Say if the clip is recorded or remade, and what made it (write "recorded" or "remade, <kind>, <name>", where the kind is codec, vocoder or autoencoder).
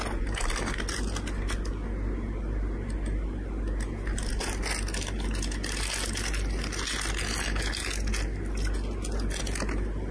recorded